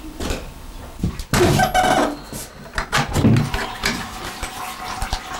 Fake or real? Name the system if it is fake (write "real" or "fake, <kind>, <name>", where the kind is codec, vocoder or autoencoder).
real